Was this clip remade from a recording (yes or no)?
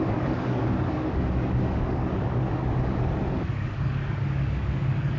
yes